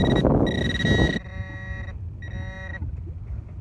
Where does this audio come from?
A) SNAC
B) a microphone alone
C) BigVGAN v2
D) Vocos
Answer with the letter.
B